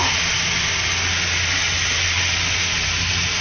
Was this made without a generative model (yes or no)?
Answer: yes